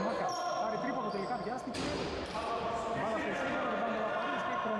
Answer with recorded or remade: recorded